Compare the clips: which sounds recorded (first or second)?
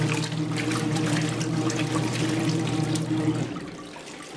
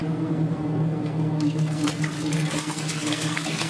first